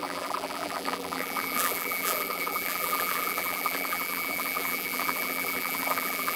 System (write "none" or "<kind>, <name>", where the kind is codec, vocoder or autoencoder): vocoder, BigVGAN v2